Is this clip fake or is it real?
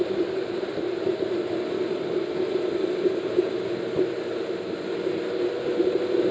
real